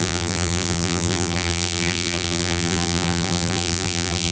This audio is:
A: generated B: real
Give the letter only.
A